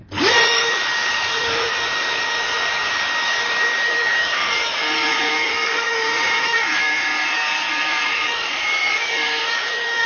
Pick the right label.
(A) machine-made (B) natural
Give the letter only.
A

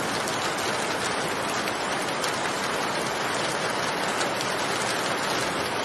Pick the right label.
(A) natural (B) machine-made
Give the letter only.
A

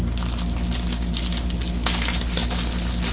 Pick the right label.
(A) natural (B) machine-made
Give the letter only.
A